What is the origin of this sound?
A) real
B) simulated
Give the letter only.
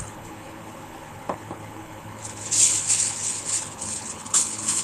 B